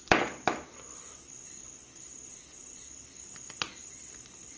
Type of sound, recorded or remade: recorded